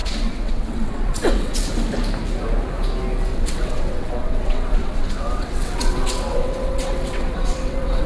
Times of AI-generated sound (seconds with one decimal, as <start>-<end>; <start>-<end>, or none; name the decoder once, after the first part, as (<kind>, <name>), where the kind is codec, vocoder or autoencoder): 0.0-1.7 (vocoder, WaveNeXt); 3.3-8.1